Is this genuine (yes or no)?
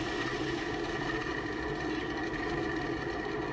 yes